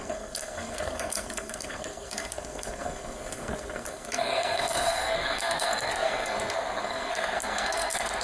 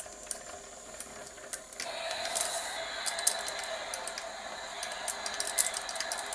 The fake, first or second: first